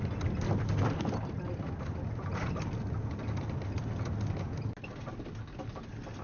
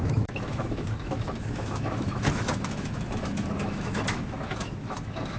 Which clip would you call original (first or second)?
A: first